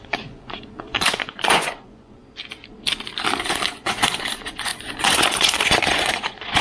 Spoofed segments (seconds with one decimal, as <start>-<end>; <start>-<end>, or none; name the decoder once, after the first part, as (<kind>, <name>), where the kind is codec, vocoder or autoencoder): 0.0-2.2 (vocoder, Vocos); 3.4-6.6

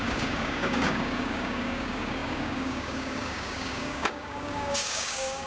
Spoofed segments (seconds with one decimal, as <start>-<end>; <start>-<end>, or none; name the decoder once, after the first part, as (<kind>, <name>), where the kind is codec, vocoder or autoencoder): 0.0-5.5 (codec, DAC)